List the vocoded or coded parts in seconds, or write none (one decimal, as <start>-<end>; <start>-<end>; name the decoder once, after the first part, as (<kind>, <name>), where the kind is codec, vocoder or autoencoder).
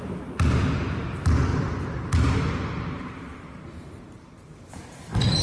1.5-4.7 (vocoder, BigVGAN v2)